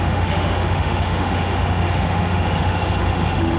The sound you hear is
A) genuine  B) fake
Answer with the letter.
B